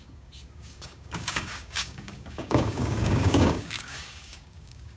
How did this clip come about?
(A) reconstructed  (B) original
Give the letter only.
A